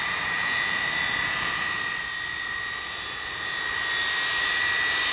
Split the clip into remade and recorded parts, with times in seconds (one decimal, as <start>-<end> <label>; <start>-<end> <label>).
0.0-0.6 remade; 0.6-4.0 recorded; 4.0-5.1 remade